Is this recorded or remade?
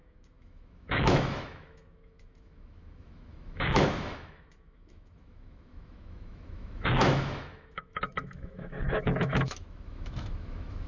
remade